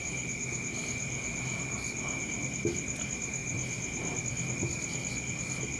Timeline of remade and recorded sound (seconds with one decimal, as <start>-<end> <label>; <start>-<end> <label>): 0.0-5.8 recorded